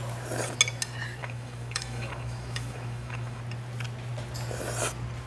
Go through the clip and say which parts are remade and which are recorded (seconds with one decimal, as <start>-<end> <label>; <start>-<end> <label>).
0.0-1.2 recorded; 1.2-3.4 remade; 3.4-5.3 recorded